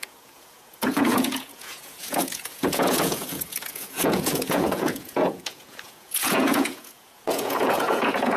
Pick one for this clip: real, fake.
fake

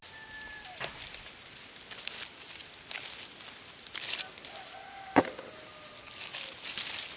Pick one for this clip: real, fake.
real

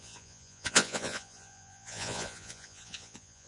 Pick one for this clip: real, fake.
fake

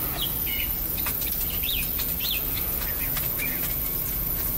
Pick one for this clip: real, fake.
fake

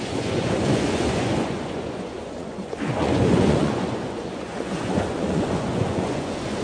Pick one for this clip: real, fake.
fake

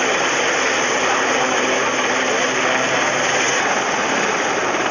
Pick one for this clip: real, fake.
real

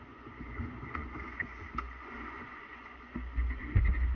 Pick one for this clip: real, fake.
fake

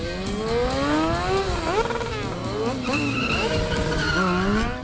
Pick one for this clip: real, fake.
real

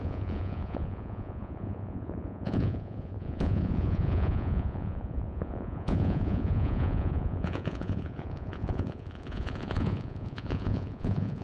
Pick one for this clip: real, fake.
fake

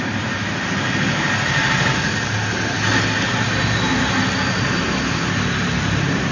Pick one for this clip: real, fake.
real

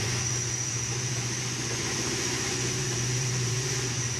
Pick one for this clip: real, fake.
fake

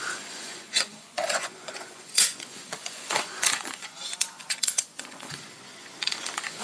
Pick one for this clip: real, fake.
fake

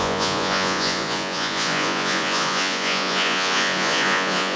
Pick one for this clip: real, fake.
fake